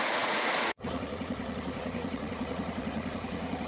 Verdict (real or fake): fake